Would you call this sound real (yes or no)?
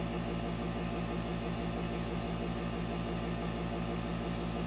yes